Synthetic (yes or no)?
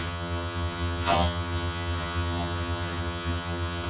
yes